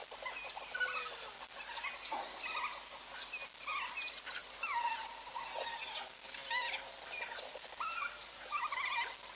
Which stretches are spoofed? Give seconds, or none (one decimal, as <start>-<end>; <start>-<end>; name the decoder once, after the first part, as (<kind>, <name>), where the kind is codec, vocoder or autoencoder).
none